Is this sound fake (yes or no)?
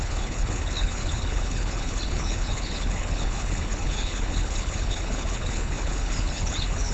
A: yes